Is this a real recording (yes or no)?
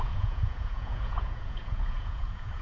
no